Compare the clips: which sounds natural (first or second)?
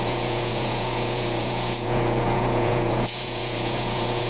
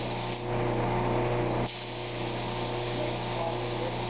second